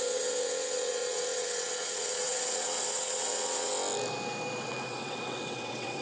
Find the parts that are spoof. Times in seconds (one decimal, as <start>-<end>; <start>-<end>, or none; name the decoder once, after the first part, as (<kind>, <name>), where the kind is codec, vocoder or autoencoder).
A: 0.0-3.7 (vocoder, WaveNeXt); 4.6-6.0